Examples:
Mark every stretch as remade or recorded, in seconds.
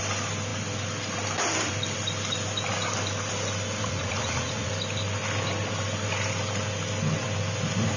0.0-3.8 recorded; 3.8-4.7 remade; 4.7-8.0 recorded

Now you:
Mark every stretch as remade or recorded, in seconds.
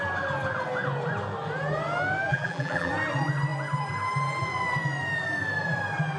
0.0-2.3 recorded; 2.3-2.9 remade; 2.9-6.2 recorded